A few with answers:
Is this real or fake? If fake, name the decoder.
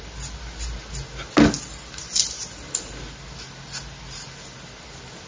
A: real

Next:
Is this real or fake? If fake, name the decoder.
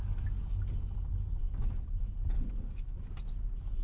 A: real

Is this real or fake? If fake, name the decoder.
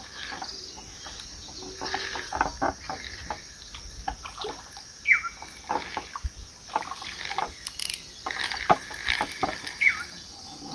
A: real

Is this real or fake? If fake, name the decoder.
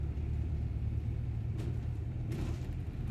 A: fake, vocoder, BigVGAN v2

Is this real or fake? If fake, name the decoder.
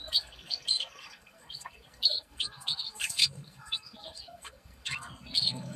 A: fake, codec, SNAC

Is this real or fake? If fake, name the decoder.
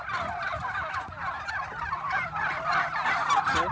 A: real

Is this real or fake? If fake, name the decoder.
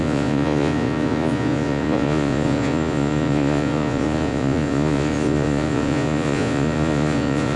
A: fake, vocoder, Vocos